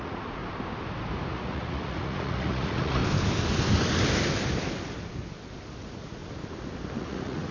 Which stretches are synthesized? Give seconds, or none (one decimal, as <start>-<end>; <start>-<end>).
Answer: 0.0-0.4; 1.3-3.0; 5.8-6.2; 7.0-7.5